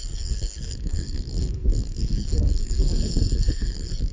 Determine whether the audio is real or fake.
fake